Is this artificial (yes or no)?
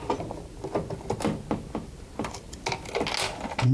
no